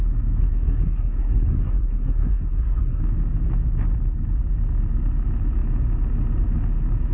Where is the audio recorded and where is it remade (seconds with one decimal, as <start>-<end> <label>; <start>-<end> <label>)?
0.0-0.4 recorded; 0.4-3.0 remade; 3.0-7.1 recorded